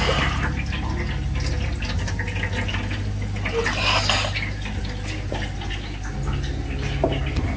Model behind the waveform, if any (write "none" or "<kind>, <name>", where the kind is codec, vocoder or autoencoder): none